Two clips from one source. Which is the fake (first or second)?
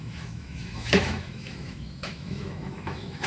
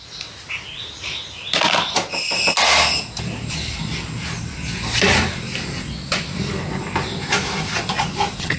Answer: first